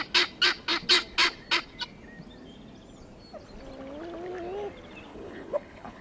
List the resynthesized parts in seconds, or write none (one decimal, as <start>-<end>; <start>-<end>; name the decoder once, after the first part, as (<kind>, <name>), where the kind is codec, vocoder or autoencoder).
5.1-6.0 (codec, HILCodec)

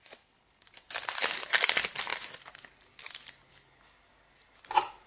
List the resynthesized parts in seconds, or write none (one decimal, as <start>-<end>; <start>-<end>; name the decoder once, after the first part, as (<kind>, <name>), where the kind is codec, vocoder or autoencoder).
none

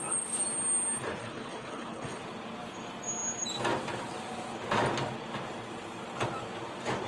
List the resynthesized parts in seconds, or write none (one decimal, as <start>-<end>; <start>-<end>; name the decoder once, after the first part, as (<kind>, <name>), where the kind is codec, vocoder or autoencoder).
1.2-2.2 (codec, HILCodec)

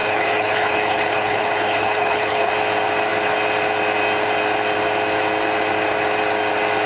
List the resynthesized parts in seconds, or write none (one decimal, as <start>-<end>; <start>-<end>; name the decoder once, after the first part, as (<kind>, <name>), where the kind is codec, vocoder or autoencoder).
0.0-2.5 (codec, HILCodec)